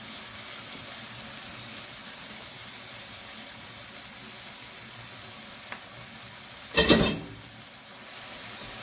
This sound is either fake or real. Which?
real